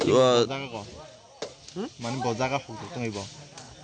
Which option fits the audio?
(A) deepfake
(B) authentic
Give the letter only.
B